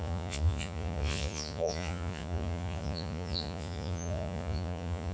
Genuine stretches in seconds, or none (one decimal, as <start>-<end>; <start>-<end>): none